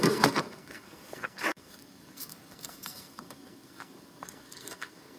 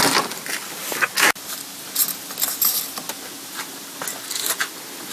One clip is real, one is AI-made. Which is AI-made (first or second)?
first